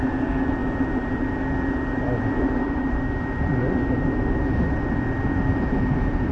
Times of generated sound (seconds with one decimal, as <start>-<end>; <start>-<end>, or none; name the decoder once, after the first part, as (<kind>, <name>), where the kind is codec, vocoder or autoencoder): 0.6-3.1 (vocoder, BigVGAN v2)